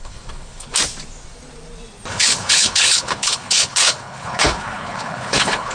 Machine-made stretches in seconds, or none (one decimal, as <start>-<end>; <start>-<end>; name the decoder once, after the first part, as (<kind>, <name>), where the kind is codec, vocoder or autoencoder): 0.0-0.7 (codec, HILCodec); 2.1-5.7

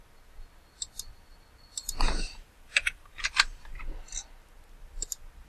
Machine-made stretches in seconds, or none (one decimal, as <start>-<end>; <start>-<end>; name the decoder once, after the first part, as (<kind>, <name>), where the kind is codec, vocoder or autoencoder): 1.8-3.8 (vocoder, BigVGAN v2)

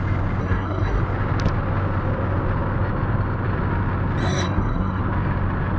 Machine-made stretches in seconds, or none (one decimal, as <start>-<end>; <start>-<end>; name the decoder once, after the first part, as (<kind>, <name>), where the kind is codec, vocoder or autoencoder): 0.4-1.0 (codec, SNAC); 4.2-5.0

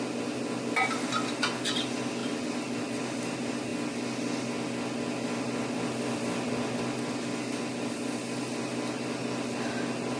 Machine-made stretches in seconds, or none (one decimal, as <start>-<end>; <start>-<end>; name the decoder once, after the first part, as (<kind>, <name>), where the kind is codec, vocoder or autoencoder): none

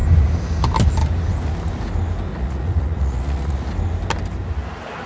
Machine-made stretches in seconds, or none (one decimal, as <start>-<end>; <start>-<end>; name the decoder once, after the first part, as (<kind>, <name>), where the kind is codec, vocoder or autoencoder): 2.3-3.7 (vocoder, Vocos)